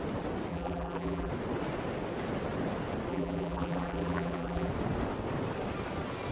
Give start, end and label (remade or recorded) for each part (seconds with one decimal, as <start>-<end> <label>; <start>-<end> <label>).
0.0-0.5 recorded; 0.5-1.3 remade; 1.3-3.1 recorded; 3.1-4.7 remade; 4.7-6.3 recorded